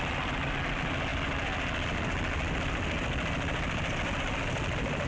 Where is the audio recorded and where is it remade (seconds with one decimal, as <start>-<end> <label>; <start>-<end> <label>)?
0.0-5.1 recorded